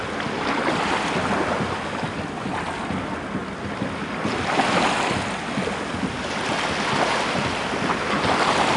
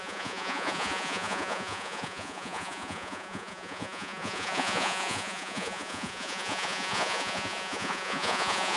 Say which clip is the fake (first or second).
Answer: second